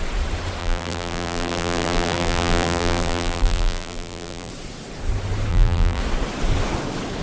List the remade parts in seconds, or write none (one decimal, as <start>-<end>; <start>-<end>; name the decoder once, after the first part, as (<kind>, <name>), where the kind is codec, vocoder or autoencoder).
0.6-4.5 (vocoder, BigVGAN v2); 5.5-6.0